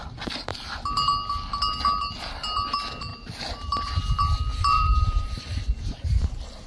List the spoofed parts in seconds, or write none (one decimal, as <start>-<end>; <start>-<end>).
3.1-4.0; 4.5-6.2